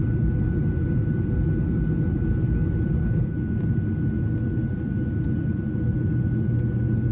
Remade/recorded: recorded